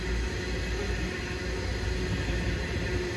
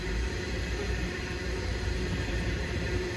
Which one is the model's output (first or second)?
second